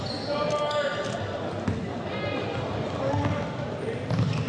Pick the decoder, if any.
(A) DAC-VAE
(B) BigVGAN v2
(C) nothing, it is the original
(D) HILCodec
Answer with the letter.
C